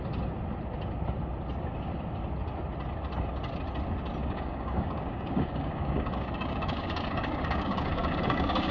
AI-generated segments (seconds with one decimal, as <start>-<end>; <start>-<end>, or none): 4.2-8.7